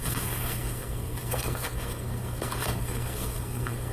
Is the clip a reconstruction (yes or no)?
yes